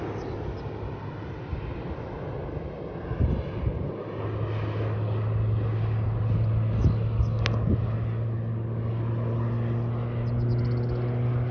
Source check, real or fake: real